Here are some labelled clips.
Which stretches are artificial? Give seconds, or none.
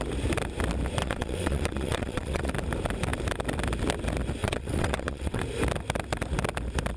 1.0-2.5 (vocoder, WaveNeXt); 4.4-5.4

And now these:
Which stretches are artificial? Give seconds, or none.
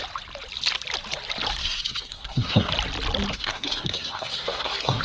1.6-2.7 (codec, SNAC); 3.3-5.0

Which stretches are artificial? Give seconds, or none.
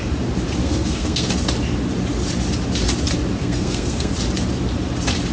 0.6-1.3 (codec, SNAC); 3.4-4.1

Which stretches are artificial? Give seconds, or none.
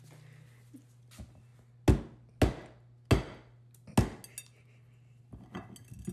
none